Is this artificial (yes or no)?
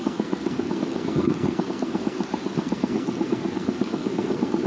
yes